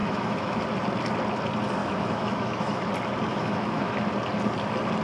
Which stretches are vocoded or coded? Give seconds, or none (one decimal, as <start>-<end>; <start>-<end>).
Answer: 0.0-0.6; 1.8-2.9; 3.3-4.0